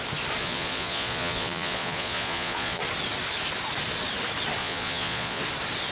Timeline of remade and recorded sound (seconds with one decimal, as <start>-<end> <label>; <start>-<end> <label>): 0.0-0.4 recorded; 0.4-2.8 remade; 2.8-4.6 recorded; 4.6-5.4 remade; 5.4-5.9 recorded